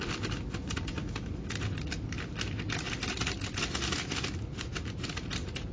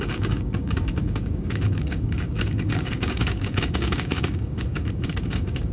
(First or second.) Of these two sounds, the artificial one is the second